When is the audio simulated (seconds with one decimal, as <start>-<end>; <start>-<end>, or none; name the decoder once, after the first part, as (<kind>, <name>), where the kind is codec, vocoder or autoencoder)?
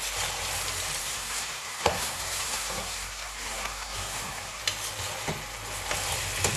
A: 1.0-4.6 (codec, SNAC)